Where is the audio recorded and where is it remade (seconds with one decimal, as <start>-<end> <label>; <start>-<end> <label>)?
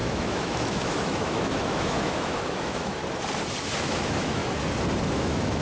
0.0-3.0 remade; 3.0-3.8 recorded; 3.8-4.4 remade; 4.4-5.1 recorded; 5.1-5.6 remade